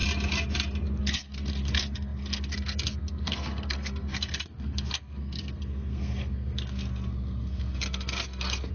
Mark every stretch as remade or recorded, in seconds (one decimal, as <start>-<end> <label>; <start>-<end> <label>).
0.0-1.0 recorded; 1.0-8.7 remade

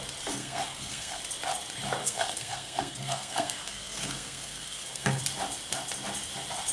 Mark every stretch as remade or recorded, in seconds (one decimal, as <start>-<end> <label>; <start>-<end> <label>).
0.0-0.4 recorded; 0.4-1.2 remade; 1.2-2.0 recorded; 2.0-5.2 remade; 5.2-6.7 recorded

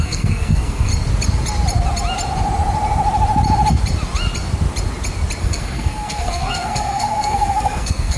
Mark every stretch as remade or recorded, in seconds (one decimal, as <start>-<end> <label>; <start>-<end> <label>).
0.0-0.9 remade; 0.9-5.4 recorded; 5.4-8.2 remade

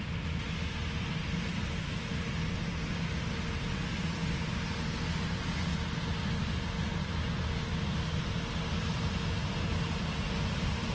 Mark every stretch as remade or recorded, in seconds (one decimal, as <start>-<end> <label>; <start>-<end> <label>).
0.0-10.9 recorded

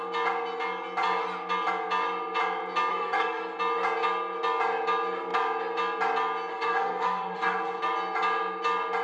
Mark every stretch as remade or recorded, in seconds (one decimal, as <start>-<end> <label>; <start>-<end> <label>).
0.0-2.9 recorded; 2.9-3.6 remade; 3.6-6.5 recorded; 6.5-7.8 remade; 7.8-9.0 recorded